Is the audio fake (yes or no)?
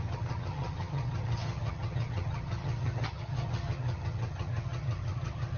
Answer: yes